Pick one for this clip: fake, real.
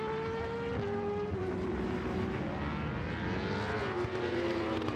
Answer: real